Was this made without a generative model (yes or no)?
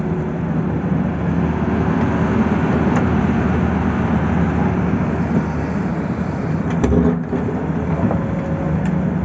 yes